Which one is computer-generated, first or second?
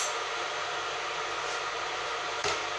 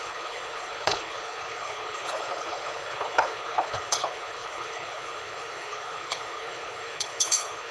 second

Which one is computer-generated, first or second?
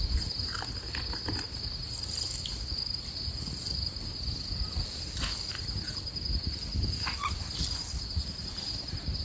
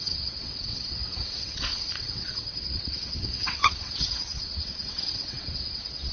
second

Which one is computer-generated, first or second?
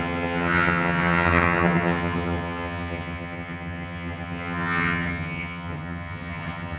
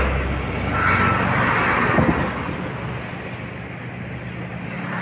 first